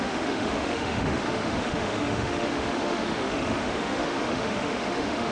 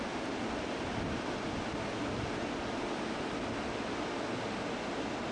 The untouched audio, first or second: second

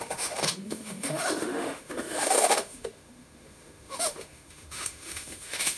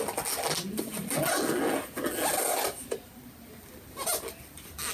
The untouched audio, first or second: second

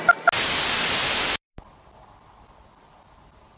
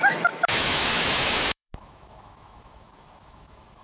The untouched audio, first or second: first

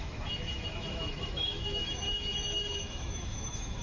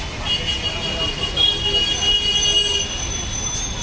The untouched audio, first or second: second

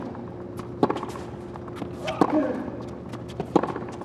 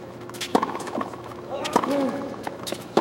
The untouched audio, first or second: first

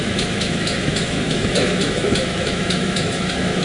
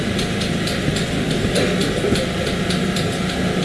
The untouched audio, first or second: second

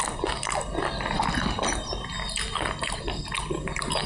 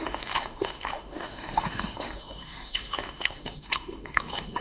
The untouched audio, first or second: first